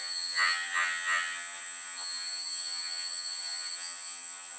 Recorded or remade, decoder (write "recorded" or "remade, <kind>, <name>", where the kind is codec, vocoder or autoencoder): remade, vocoder, HiFi-GAN